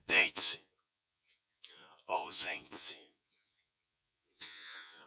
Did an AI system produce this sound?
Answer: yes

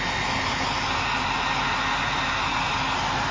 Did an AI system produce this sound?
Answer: no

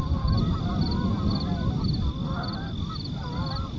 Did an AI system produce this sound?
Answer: no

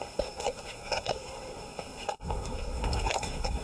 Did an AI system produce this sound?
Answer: yes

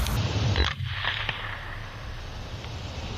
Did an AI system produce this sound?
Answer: yes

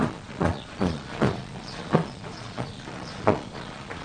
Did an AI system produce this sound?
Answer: yes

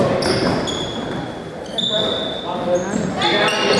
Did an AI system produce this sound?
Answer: no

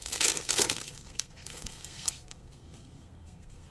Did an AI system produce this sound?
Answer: yes